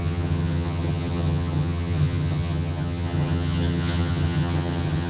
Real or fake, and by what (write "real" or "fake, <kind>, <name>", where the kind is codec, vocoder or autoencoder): fake, vocoder, HiFi-GAN